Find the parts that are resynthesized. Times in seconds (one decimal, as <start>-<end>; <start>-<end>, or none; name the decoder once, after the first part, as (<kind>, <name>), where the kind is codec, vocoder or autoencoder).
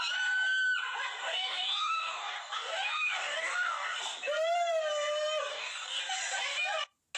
1.2-4.0 (codec, DAC); 5.5-6.0